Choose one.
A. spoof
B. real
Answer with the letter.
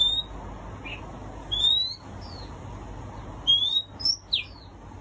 B